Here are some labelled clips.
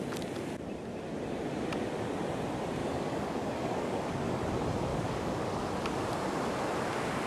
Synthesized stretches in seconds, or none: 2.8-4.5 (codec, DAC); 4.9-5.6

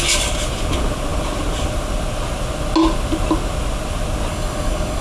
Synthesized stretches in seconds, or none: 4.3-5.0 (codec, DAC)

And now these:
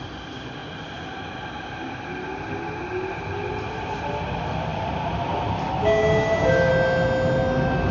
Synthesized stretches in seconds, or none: 5.8-6.7 (codec, DAC)

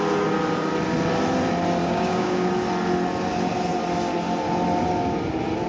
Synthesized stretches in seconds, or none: 1.8-2.5 (codec, DAC)

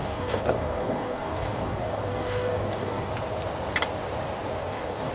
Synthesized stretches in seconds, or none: 0.0-3.1 (codec, DAC); 4.6-5.1

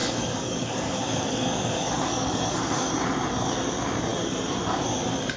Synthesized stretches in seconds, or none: 0.0-2.9 (codec, DAC)